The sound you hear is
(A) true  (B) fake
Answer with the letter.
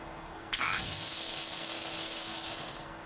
B